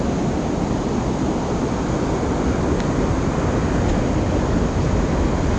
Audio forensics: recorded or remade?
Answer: recorded